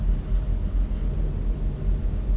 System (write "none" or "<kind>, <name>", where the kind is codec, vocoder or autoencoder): none